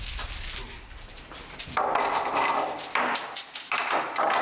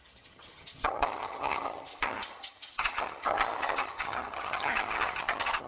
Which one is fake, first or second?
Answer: second